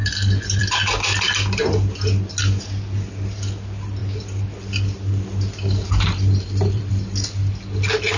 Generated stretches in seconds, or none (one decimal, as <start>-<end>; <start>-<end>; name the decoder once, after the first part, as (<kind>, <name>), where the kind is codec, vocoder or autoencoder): none

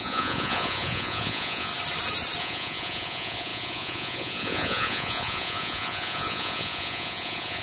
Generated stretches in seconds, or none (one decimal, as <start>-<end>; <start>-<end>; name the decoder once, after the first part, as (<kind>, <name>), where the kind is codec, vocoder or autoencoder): 0.0-1.7 (vocoder, Vocos); 2.4-7.6

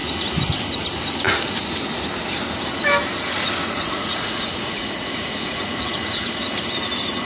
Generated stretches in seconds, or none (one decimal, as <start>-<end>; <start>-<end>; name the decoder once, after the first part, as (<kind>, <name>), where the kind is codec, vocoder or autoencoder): 3.6-6.4 (vocoder, Vocos)

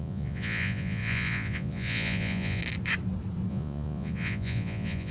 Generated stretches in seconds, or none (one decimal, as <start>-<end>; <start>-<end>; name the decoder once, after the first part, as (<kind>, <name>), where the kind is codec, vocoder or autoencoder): 0.0-2.6 (vocoder, Vocos); 3.5-5.1

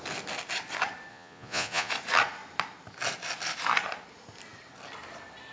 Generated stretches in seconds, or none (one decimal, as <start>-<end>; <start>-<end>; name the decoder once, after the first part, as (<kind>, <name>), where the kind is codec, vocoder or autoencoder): 1.1-1.9 (vocoder, Vocos)

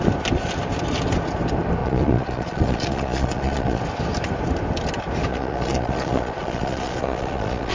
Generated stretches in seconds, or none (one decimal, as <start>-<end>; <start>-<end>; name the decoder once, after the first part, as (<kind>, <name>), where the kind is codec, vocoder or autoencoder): 1.8-3.8 (vocoder, Vocos); 5.3-7.7

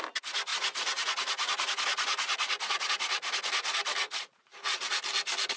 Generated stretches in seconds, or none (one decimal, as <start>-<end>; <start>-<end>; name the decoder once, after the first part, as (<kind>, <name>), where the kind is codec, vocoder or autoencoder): 0.5-3.4 (vocoder, Vocos); 4.0-5.0

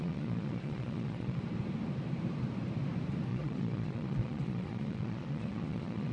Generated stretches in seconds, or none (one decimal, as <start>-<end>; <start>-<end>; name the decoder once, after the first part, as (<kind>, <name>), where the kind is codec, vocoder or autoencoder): 0.0-1.4 (vocoder, Vocos); 3.3-6.1